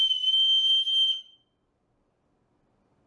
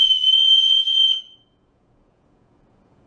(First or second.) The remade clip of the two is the second